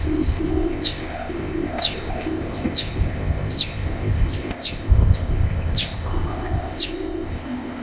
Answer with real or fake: fake